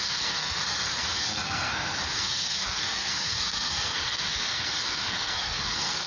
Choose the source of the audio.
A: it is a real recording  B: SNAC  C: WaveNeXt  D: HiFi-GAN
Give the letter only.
B